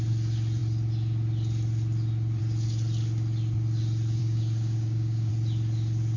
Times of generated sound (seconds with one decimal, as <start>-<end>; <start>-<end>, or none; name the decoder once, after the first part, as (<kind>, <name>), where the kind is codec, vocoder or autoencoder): 4.2-5.3 (codec, DAC)